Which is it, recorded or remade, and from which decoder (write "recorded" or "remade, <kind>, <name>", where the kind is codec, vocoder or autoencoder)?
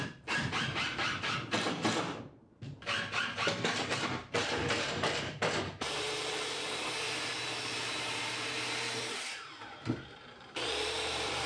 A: remade, vocoder, BigVGAN v2